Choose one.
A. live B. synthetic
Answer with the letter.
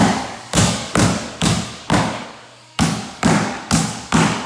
B